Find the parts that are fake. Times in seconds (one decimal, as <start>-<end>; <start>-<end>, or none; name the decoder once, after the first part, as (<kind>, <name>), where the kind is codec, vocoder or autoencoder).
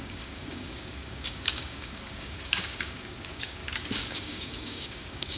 0.0-3.6 (codec, DAC); 4.1-5.4